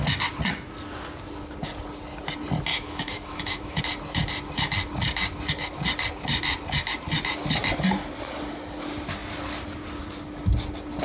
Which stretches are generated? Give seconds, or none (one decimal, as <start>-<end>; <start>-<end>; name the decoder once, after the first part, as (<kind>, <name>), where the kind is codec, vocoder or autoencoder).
2.7-3.8 (autoencoder, DAC-VAE)